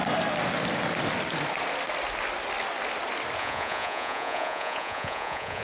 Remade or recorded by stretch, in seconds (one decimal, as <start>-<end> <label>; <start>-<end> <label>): 0.0-3.4 recorded; 3.4-5.6 remade